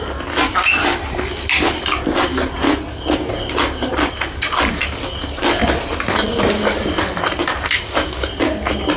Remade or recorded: recorded